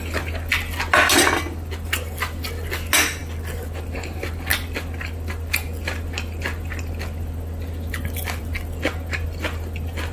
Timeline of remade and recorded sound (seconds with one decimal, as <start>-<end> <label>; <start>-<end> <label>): 0.0-10.1 recorded